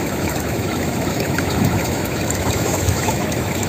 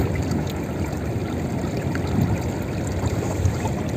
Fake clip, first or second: first